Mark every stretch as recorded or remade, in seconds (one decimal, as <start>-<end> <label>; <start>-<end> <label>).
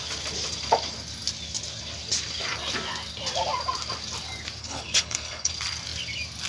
0.0-4.6 recorded; 4.6-5.5 remade; 5.5-6.5 recorded